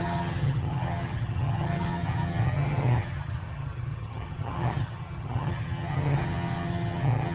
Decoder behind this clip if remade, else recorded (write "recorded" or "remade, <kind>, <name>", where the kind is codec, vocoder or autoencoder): remade, vocoder, HiFi-GAN